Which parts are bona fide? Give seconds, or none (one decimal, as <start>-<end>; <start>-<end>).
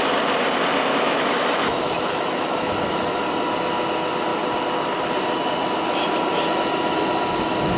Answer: 0.0-0.9; 3.1-7.8